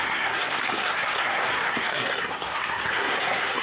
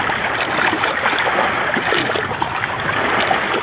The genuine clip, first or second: second